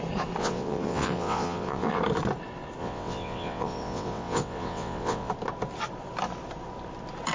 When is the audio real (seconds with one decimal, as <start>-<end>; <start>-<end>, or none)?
0.0-0.4; 2.0-2.8; 5.3-7.3